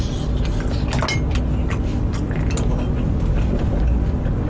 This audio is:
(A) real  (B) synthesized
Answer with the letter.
A